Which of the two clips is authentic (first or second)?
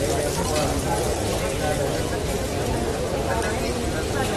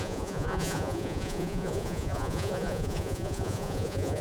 first